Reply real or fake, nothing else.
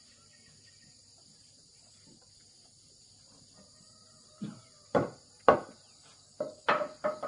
real